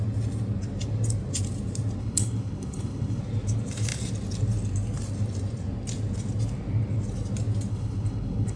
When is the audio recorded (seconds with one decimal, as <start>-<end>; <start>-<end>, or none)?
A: 0.0-2.0; 3.2-7.7